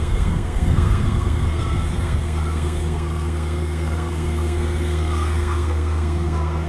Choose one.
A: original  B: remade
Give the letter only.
B